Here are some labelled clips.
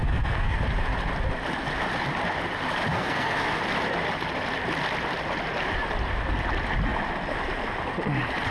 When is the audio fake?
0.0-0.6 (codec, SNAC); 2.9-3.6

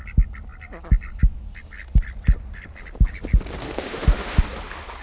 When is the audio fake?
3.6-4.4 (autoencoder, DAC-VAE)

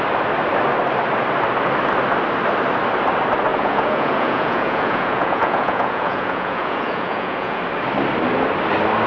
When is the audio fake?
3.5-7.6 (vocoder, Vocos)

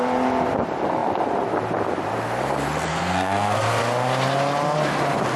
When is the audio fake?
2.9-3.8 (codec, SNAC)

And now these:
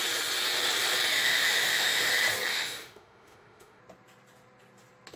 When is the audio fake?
1.1-2.1 (autoencoder, DAC-VAE); 2.5-3.8

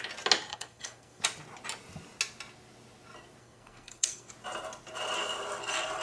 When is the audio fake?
0.5-1.2 (codec, SNAC); 3.4-4.3